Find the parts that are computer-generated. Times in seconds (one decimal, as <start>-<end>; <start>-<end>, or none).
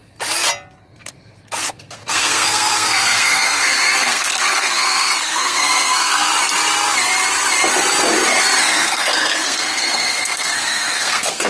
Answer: 1.6-6.3; 8.6-11.5